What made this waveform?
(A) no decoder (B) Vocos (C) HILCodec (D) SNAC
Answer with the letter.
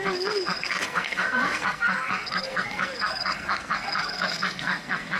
D